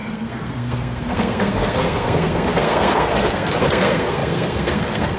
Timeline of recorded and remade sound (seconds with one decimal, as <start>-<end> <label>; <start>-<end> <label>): 0.0-5.2 remade